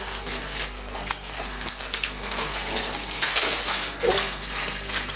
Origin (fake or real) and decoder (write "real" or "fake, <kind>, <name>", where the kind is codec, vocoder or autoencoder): fake, codec, SNAC